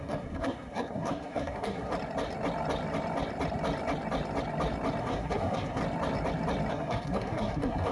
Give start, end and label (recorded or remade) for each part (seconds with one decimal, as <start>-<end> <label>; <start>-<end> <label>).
0.0-1.9 remade; 1.9-5.0 recorded; 5.0-5.8 remade; 5.8-6.7 recorded; 6.7-7.9 remade